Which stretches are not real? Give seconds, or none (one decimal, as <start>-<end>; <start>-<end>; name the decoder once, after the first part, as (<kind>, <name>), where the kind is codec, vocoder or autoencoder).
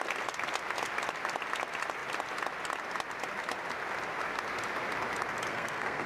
5.5-6.1 (codec, SNAC)